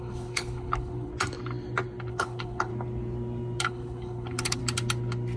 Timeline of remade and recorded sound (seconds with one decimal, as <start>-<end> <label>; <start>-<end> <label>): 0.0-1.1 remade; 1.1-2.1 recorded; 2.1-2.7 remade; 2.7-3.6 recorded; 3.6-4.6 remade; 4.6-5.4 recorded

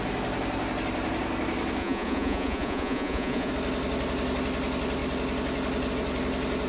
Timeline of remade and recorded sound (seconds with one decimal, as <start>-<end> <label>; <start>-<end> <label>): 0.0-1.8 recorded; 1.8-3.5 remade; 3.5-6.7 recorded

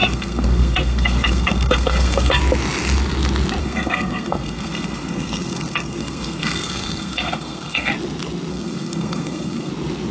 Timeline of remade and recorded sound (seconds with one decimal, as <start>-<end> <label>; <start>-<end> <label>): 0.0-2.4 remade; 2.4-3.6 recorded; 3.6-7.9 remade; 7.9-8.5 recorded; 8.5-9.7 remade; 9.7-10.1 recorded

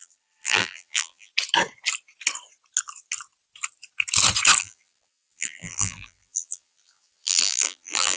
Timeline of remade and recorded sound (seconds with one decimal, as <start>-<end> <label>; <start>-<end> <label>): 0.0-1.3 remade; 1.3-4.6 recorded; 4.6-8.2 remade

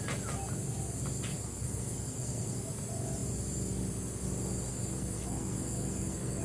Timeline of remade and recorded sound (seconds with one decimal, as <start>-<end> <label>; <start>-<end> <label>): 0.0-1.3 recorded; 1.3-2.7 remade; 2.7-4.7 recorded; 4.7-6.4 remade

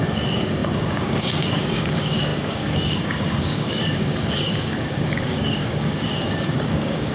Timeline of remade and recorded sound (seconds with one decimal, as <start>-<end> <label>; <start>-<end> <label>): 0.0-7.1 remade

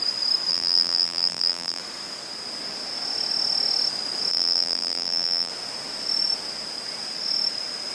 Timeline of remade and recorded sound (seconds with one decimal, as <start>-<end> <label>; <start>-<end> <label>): 0.0-0.5 recorded; 0.5-1.8 remade; 1.8-4.3 recorded; 4.3-5.5 remade; 5.5-7.9 recorded